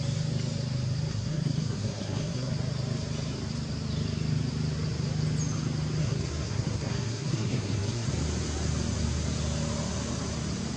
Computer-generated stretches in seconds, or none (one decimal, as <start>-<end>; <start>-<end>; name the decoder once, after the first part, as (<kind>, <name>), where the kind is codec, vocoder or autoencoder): 1.1-2.5 (codec, SNAC); 6.0-8.1